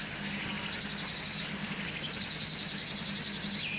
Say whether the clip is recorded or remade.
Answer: recorded